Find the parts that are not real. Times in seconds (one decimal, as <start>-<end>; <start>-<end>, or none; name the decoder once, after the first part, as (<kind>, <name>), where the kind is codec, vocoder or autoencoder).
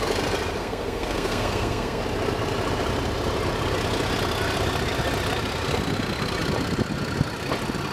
0.6-2.0 (codec, SNAC)